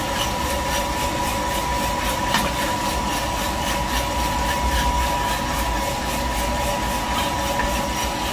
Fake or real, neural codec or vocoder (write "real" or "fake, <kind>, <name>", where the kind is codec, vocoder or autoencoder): real